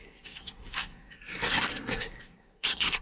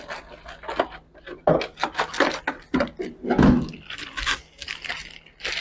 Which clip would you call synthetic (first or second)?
first